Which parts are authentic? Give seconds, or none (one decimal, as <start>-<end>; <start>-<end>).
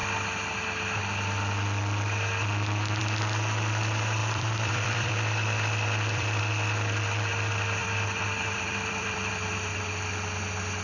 0.0-4.2; 6.4-7.8; 9.3-10.8